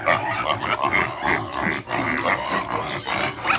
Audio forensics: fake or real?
fake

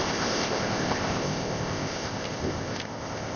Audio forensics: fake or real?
fake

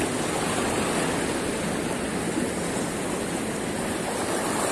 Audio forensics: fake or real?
real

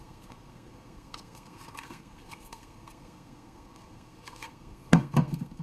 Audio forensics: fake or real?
fake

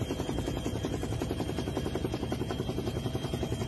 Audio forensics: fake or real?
real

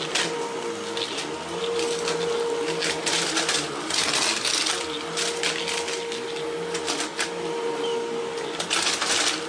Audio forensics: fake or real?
real